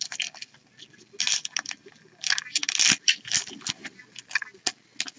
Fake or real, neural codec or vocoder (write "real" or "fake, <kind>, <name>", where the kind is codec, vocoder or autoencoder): real